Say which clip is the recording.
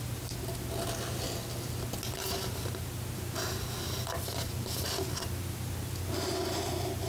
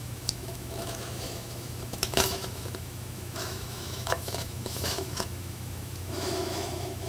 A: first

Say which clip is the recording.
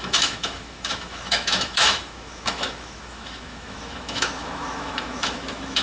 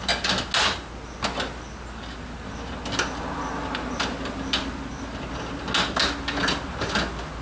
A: second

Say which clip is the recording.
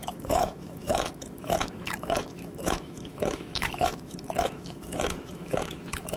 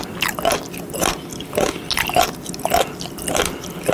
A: second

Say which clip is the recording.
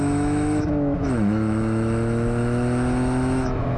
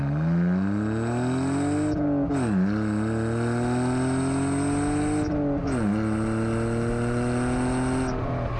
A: second